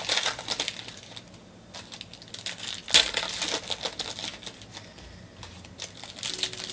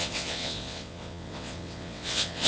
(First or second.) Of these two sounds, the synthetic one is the second